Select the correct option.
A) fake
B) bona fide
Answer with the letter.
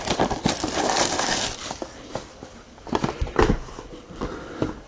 A